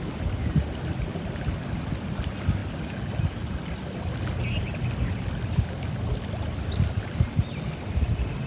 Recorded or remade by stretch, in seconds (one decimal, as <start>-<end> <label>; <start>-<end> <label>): 0.0-8.5 recorded